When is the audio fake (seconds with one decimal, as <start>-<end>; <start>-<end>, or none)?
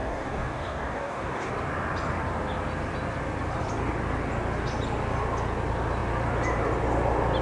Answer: 0.0-1.5